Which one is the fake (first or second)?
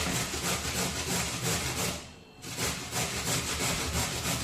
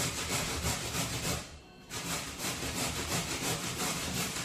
second